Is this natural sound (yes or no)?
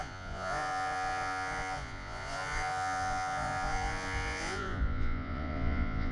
no